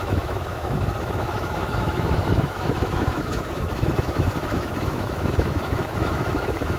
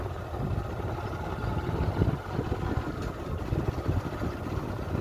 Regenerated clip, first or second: first